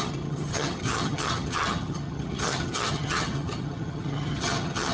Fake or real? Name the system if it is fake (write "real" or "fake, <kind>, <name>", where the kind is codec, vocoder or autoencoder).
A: fake, vocoder, HiFi-GAN